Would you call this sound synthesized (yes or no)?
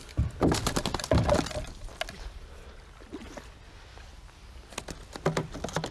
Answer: no